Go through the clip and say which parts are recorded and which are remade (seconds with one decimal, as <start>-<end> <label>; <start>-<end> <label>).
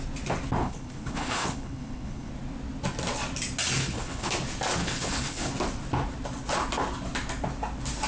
0.0-0.6 recorded; 0.6-2.3 remade; 2.3-3.8 recorded; 3.8-4.3 remade; 4.3-4.8 recorded; 4.8-5.5 remade; 5.5-8.1 recorded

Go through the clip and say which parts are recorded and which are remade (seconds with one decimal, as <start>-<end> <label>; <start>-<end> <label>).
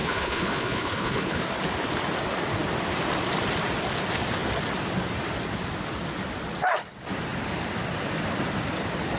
0.0-1.4 remade; 1.4-9.2 recorded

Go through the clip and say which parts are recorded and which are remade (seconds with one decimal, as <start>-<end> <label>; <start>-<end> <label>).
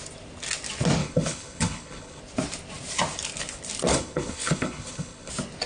0.0-1.0 recorded; 1.0-2.2 remade; 2.2-3.9 recorded; 3.9-5.3 remade; 5.3-5.7 recorded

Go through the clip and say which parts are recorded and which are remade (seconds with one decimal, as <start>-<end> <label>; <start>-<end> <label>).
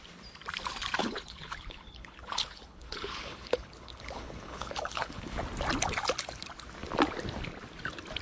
0.0-1.0 recorded; 1.0-5.4 remade; 5.4-8.2 recorded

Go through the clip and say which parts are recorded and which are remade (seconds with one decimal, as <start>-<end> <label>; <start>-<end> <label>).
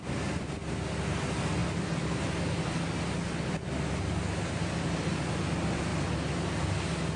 0.0-7.2 recorded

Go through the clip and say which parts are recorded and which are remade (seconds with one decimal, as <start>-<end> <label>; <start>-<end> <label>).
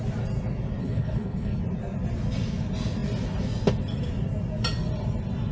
0.0-0.8 recorded; 0.8-1.6 remade; 1.6-5.5 recorded